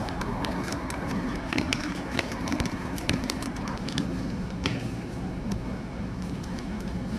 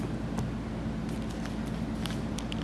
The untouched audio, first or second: second